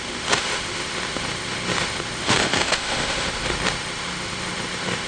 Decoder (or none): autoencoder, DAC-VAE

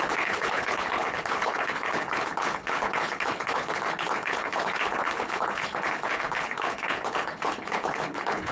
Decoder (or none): codec, HILCodec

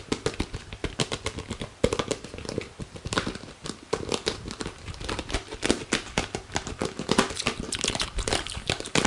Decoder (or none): vocoder, BigVGAN v2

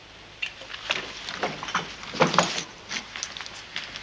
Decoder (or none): none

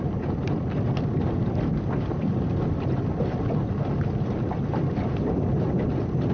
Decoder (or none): none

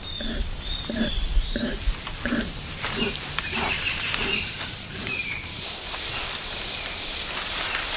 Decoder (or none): vocoder, BigVGAN v2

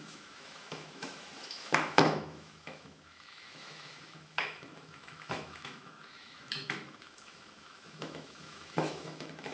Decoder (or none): autoencoder, DAC-VAE